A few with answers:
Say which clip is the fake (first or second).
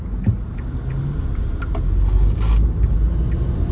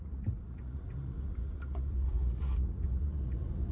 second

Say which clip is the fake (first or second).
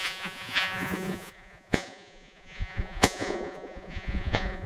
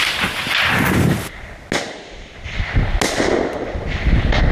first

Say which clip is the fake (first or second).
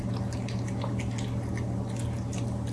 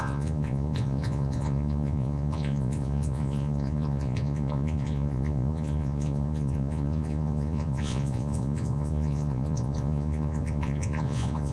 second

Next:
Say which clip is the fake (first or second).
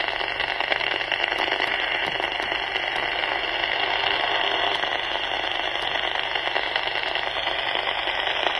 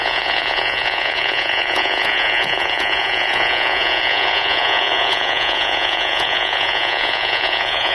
second